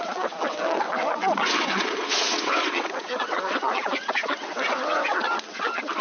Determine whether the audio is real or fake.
fake